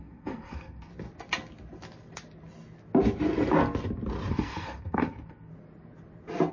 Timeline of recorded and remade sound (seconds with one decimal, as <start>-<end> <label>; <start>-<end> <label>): 0.0-0.9 remade; 0.9-4.3 recorded; 4.3-5.5 remade; 5.5-6.5 recorded

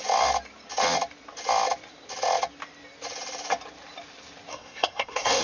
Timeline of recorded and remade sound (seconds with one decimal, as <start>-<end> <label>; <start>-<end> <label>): 0.0-4.5 recorded; 4.5-5.4 remade

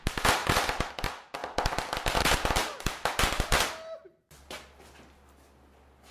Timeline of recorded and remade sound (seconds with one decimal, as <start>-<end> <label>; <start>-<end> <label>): 0.0-0.4 recorded; 0.4-0.9 remade; 0.9-6.1 recorded